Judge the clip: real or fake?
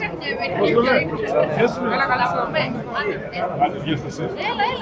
fake